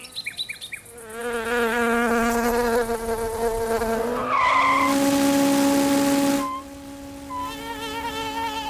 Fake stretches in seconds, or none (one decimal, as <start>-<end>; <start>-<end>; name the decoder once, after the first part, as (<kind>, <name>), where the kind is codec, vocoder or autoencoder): none